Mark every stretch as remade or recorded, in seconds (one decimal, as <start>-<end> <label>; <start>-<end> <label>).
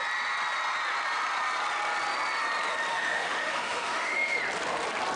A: 0.0-2.9 recorded; 2.9-4.4 remade; 4.4-5.2 recorded